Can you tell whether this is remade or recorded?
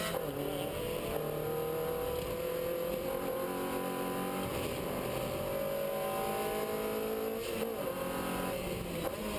recorded